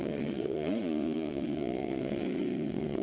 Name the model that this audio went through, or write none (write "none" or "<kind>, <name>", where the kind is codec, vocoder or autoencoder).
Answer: vocoder, WaveNeXt